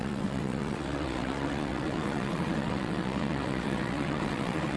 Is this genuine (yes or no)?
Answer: no